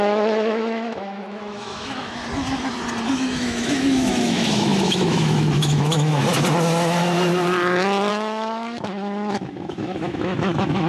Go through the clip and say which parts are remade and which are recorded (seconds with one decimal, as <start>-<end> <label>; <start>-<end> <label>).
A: 0.0-2.2 remade; 2.2-3.1 recorded; 3.1-6.2 remade; 6.2-8.1 recorded; 8.1-10.9 remade